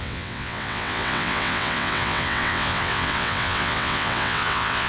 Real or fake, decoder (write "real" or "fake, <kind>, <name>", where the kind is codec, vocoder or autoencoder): fake, vocoder, WaveNeXt